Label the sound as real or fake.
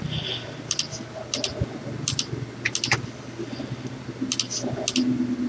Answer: real